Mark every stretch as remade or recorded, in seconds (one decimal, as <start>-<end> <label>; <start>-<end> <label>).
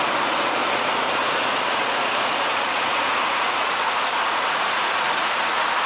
0.0-5.9 remade